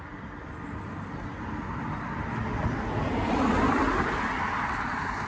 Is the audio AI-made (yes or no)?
no